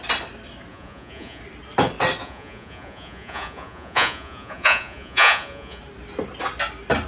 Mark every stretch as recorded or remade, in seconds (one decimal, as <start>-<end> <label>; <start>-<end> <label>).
0.0-0.7 recorded; 0.7-1.4 remade; 1.4-2.2 recorded; 2.2-5.8 remade; 5.8-7.1 recorded